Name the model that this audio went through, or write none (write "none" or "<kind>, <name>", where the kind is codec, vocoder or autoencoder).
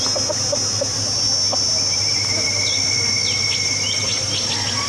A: none